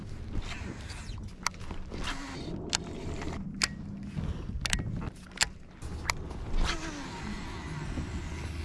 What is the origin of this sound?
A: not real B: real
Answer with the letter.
B